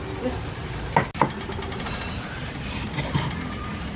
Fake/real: real